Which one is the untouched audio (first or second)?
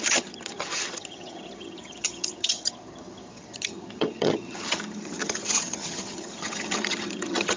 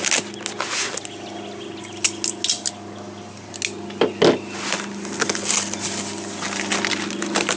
second